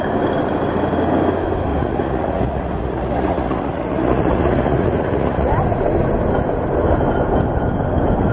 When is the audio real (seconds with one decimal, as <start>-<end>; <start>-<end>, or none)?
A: 0.0-1.7; 5.5-8.3